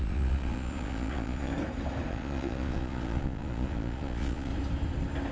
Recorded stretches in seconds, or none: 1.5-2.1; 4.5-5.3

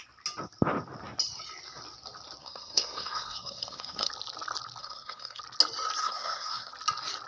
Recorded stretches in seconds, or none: 0.0-2.4; 4.1-4.8; 5.4-6.0; 6.7-7.3